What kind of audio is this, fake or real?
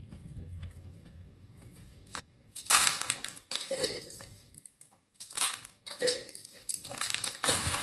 fake